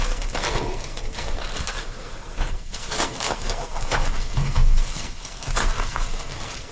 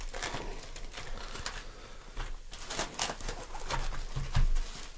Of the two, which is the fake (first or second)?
first